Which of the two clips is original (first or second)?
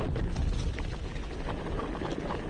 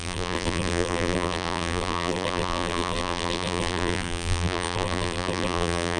first